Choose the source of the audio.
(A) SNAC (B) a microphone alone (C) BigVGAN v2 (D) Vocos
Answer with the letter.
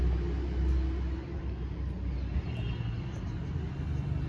B